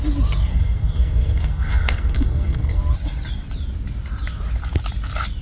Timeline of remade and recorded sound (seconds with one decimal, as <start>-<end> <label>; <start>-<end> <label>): 0.0-0.5 recorded; 0.5-2.8 remade; 2.8-5.4 recorded